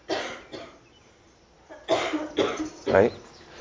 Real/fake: fake